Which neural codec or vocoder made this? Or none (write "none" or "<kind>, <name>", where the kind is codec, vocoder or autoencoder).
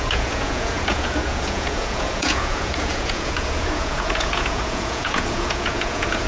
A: vocoder, Vocos